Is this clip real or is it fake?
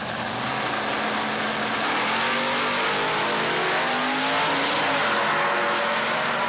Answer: real